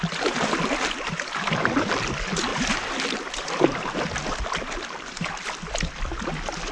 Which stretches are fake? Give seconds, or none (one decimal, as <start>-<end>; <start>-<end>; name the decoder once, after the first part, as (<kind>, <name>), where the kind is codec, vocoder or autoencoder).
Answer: none